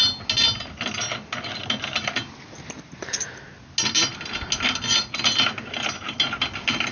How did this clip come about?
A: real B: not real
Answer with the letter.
A